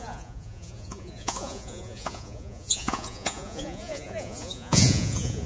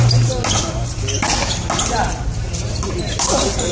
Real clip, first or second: second